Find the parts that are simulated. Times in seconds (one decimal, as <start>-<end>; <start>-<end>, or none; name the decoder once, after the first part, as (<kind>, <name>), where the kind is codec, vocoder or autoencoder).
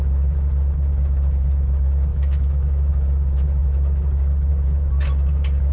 2.1-2.9 (autoencoder, DAC-VAE)